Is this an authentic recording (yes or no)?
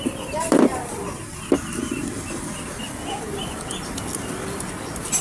yes